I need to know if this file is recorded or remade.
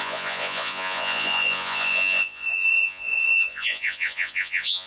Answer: remade